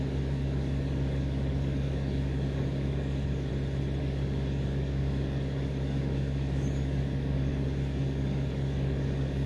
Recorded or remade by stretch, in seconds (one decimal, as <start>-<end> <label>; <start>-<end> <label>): 0.0-3.5 remade; 3.5-4.0 recorded; 4.0-9.5 remade